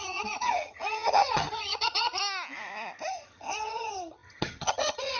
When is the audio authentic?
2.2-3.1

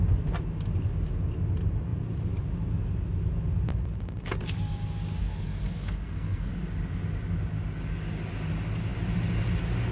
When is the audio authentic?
0.0-5.2; 6.5-9.9

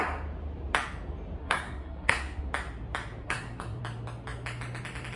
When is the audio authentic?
0.0-1.4; 2.5-3.2; 3.8-5.2

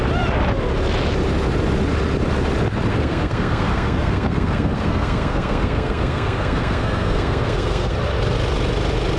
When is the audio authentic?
0.0-2.9; 8.0-9.2

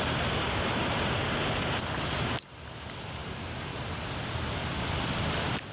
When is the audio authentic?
none

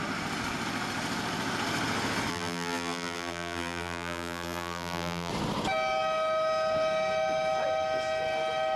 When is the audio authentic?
0.0-2.3; 5.3-8.8